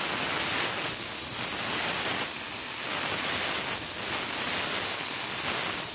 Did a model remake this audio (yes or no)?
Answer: no